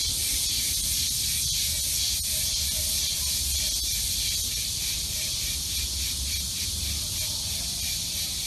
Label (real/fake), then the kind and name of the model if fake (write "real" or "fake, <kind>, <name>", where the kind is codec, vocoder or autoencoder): real